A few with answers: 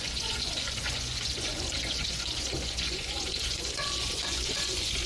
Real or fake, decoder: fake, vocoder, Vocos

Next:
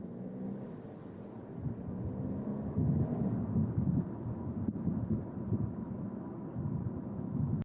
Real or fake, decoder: real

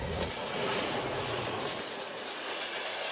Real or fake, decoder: fake, vocoder, Vocos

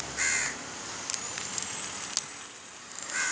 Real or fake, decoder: real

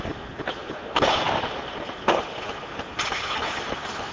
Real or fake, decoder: real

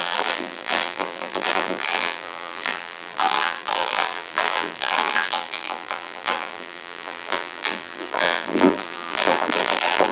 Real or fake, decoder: fake, vocoder, BigVGAN v2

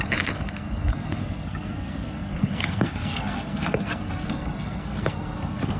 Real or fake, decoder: fake, codec, SNAC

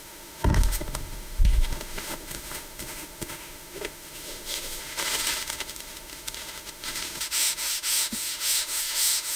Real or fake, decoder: fake, autoencoder, DAC-VAE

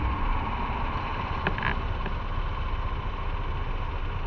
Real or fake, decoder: real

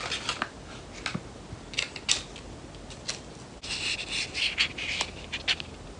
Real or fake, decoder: real